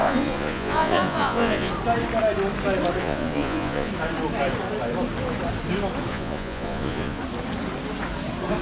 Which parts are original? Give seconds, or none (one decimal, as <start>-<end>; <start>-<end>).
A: 1.7-3.0; 3.9-6.1; 7.2-8.6